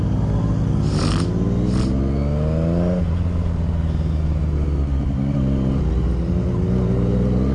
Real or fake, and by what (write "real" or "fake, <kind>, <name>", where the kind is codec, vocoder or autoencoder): real